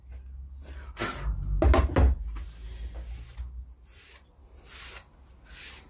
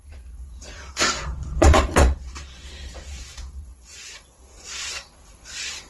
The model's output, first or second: second